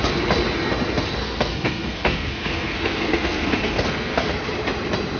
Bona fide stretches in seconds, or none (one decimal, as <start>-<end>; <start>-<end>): 0.0-1.2; 4.3-5.2